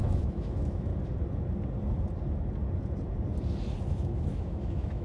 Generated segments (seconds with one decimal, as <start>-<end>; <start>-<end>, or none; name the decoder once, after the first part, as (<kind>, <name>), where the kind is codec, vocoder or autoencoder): 0.0-0.9 (autoencoder, DAC-VAE); 3.9-5.0